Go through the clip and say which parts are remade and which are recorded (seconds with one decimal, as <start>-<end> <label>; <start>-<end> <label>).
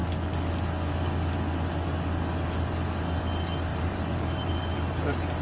0.0-3.7 recorded; 3.7-4.5 remade; 4.5-5.4 recorded